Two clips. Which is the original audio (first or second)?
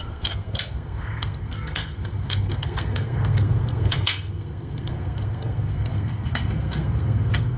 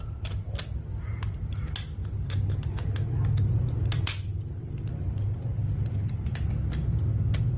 second